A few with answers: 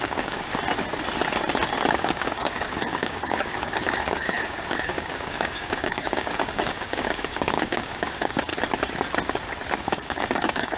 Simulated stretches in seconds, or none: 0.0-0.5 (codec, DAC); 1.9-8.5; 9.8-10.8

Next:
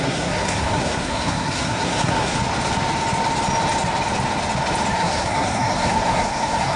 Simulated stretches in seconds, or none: 0.0-2.4 (codec, SNAC); 4.9-6.8

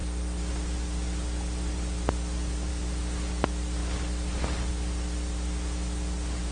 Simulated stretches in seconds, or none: none

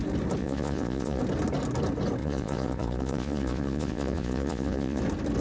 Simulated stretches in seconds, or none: 0.4-1.2 (vocoder, Vocos); 2.2-5.0

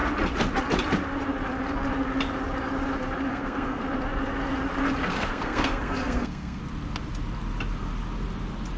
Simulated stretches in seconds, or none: 3.3-3.8 (codec, SNAC); 5.0-6.6

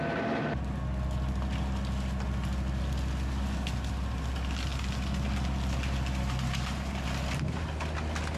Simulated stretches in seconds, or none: none